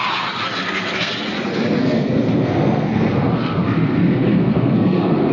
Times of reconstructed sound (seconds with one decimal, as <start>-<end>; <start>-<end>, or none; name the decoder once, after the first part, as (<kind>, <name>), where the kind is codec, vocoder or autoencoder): 0.6-1.1 (codec, SNAC); 1.8-5.3